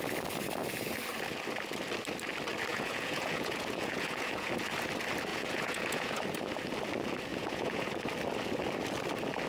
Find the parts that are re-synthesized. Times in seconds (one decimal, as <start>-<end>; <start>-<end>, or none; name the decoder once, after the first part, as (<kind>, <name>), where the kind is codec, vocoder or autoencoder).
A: 2.7-4.5 (vocoder, Vocos); 5.3-6.2; 7.3-8.0